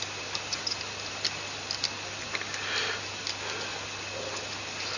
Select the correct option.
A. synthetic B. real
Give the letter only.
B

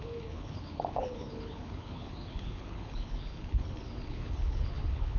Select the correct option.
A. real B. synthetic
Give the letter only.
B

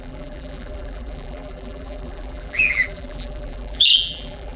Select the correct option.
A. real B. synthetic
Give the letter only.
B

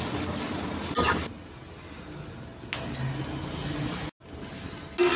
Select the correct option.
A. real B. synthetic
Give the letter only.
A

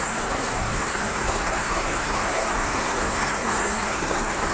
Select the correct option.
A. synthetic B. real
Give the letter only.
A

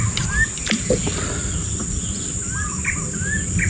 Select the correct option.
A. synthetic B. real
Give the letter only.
B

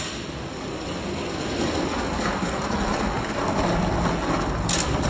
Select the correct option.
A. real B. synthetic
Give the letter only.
A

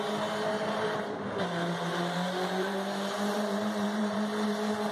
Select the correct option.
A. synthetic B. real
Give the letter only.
A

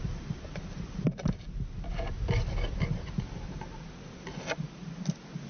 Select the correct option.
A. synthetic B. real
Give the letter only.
B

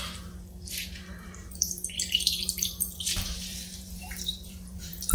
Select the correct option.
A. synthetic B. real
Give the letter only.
A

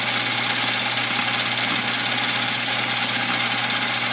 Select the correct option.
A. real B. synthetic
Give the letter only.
A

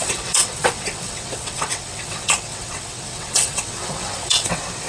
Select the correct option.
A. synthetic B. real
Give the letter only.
A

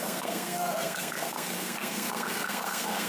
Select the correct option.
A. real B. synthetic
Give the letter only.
B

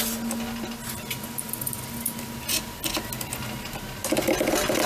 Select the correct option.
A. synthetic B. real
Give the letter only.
B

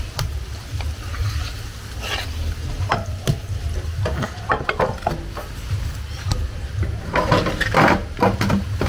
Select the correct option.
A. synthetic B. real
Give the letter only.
B